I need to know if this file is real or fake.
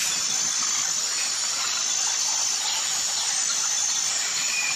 real